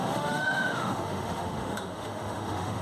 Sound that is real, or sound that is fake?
fake